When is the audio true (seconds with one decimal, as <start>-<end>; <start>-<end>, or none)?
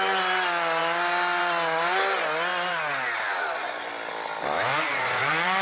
0.0-4.7